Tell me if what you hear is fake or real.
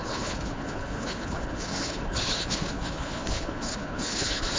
fake